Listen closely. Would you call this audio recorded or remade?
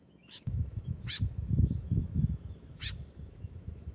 remade